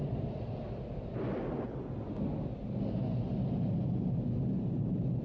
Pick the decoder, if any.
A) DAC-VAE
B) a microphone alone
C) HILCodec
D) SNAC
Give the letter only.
B